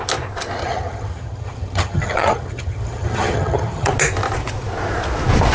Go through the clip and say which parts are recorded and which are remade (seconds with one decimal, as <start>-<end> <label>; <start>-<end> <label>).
0.0-0.6 recorded; 0.6-3.9 remade; 3.9-5.5 recorded